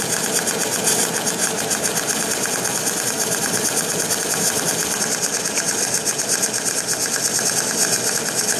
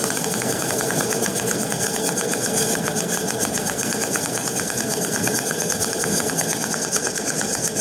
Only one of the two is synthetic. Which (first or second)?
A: second